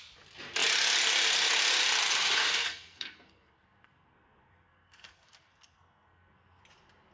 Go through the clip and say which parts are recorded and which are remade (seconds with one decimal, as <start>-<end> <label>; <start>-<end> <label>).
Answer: 0.0-2.4 recorded; 2.4-6.6 remade; 6.6-7.1 recorded